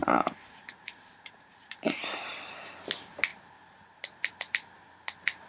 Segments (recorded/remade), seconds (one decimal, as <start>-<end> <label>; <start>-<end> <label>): 0.0-2.3 remade; 2.3-5.5 recorded